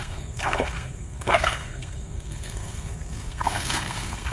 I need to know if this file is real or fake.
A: fake